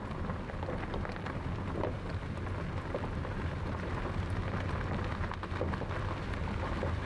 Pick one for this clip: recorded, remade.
recorded